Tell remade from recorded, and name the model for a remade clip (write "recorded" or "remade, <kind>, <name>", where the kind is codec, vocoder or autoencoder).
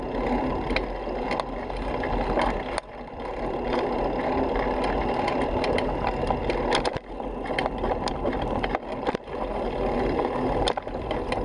recorded